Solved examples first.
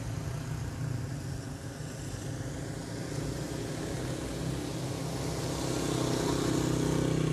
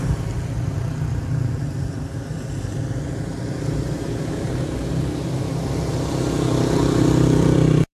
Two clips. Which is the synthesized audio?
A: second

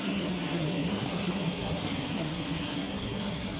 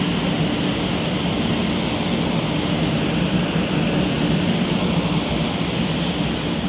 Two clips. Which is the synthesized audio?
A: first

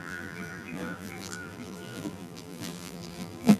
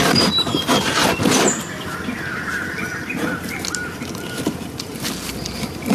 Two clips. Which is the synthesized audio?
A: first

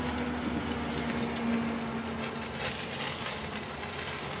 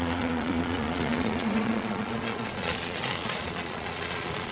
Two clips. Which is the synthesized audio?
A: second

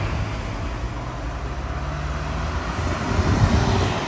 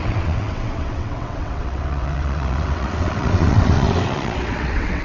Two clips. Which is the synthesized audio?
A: second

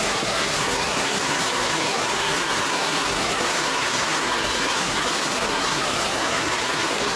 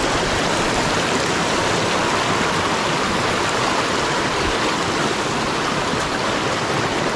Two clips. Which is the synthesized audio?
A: first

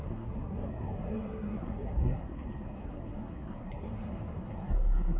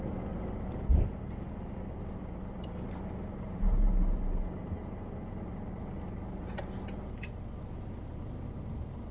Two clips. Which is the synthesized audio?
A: first